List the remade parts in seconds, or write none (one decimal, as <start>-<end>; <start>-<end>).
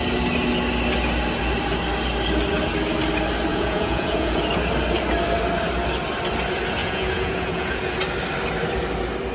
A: 3.5-4.4; 6.8-7.9